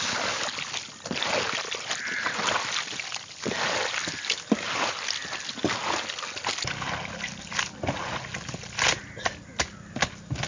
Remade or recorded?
recorded